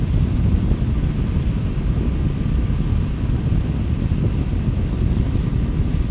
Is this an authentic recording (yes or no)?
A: yes